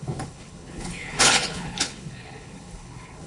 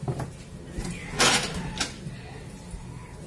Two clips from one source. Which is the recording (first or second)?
second